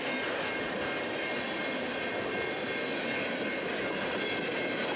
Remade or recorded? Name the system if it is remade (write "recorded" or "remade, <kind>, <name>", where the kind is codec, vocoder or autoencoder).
recorded